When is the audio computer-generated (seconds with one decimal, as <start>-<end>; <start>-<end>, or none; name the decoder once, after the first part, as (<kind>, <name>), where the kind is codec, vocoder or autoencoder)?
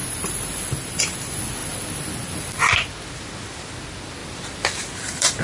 0.0-1.0 (vocoder, BigVGAN v2); 1.6-2.7; 4.2-5.4